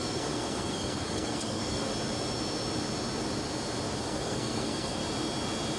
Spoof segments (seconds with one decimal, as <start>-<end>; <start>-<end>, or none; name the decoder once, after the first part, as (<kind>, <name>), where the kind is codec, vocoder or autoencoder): 0.0-1.9 (codec, SNAC); 4.0-5.0